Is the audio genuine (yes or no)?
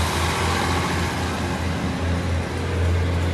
yes